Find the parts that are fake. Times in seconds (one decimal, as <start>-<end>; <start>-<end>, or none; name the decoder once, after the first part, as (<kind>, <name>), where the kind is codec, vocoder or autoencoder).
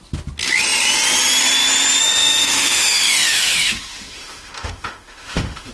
2.0-5.7 (autoencoder, DAC-VAE)